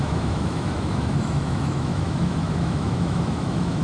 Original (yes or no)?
no